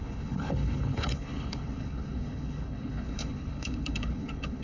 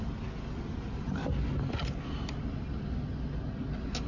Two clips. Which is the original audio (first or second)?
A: second